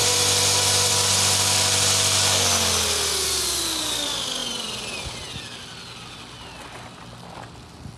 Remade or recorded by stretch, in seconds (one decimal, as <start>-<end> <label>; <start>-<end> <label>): 0.0-0.9 remade; 0.9-8.0 recorded